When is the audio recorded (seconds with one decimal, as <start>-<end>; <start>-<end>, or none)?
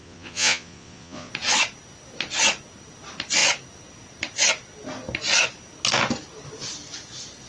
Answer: 1.3-7.5